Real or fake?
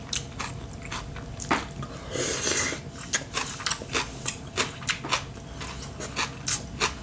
real